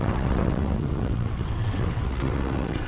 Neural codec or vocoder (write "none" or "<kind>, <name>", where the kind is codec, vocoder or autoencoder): vocoder, WaveNeXt